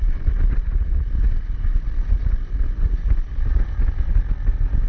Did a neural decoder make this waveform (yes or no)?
no